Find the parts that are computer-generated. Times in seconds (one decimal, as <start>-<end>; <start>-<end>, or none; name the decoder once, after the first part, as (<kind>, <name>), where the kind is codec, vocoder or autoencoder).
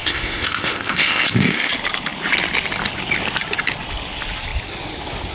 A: 0.0-1.7 (codec, ZipCodec)